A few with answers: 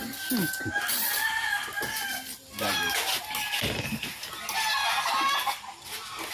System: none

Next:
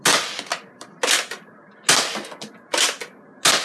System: none